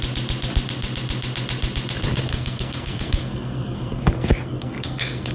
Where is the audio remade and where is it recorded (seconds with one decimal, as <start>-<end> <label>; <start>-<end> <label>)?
0.0-2.3 recorded; 2.3-5.3 remade

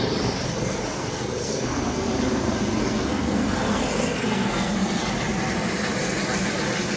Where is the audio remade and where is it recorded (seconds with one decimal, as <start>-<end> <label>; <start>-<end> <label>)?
0.0-0.6 recorded; 0.6-2.1 remade; 2.1-2.8 recorded; 2.8-5.1 remade; 5.1-7.0 recorded

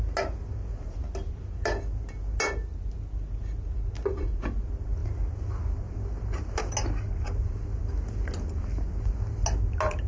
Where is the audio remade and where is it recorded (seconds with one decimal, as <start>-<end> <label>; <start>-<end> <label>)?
0.0-10.1 recorded

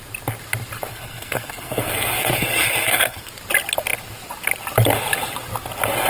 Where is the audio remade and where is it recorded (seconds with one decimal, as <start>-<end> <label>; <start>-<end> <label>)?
0.0-0.9 recorded; 0.9-3.3 remade; 3.3-6.1 recorded

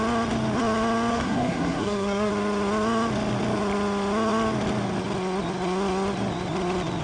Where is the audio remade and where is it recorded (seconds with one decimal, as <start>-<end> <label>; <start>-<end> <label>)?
0.0-1.1 recorded; 1.1-2.3 remade; 2.3-7.0 recorded

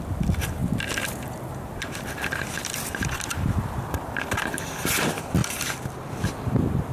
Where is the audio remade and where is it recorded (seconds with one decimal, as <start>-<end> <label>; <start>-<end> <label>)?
0.0-0.6 remade; 0.6-1.4 recorded; 1.4-5.4 remade; 5.4-6.1 recorded; 6.1-6.9 remade

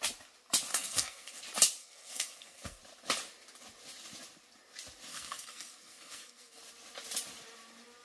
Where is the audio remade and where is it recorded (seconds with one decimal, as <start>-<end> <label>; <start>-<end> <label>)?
0.0-0.7 recorded; 0.7-1.4 remade; 1.4-1.8 recorded; 1.8-2.8 remade; 2.8-5.1 recorded; 5.1-6.6 remade; 6.6-8.0 recorded